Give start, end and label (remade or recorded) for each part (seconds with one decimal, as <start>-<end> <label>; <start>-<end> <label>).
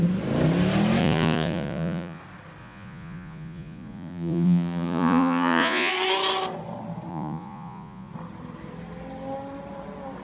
0.0-1.0 recorded; 1.0-2.2 remade; 2.2-2.6 recorded; 2.6-5.9 remade; 5.9-7.1 recorded; 7.1-8.1 remade; 8.1-10.2 recorded